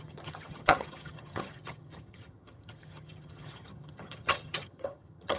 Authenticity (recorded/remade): remade